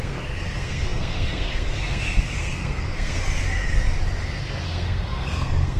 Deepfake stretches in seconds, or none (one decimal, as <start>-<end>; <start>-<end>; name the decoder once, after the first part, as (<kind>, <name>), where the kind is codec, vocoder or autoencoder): 0.0-3.2 (codec, SNAC); 4.6-5.8